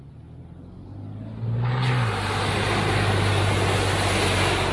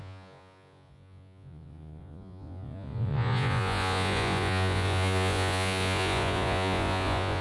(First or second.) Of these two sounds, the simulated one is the second